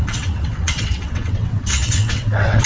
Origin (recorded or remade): remade